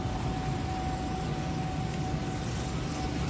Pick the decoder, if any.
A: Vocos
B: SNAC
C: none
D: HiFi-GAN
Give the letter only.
C